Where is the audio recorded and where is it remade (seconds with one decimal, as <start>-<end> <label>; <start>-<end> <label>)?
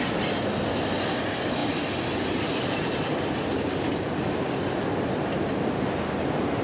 0.0-6.6 recorded